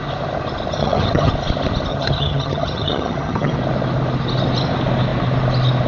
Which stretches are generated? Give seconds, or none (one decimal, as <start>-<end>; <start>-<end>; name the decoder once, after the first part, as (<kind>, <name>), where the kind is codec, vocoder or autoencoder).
0.8-1.3 (vocoder, HiFi-GAN); 1.9-3.5